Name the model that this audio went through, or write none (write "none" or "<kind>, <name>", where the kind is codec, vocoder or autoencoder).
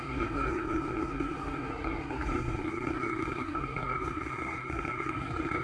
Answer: codec, SNAC